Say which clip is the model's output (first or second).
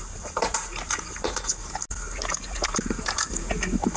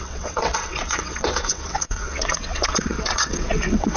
second